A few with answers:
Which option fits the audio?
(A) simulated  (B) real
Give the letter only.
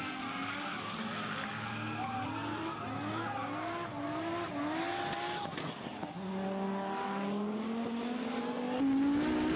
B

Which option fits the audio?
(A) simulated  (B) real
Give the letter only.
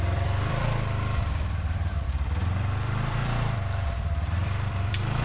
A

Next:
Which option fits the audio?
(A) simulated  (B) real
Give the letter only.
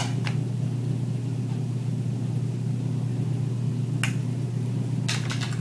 B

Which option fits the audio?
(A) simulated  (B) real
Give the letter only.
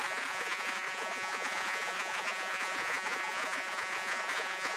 A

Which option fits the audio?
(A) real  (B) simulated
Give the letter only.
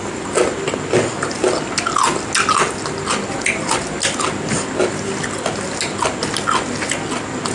A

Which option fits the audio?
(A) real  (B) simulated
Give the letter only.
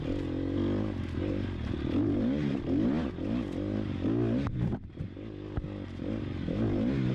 A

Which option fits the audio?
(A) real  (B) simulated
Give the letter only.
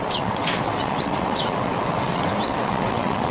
B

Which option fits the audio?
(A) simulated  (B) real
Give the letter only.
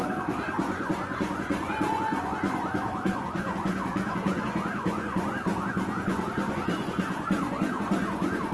A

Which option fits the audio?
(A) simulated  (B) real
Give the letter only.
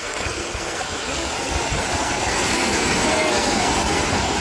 A